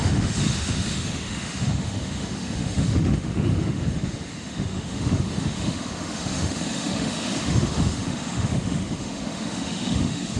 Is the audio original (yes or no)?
no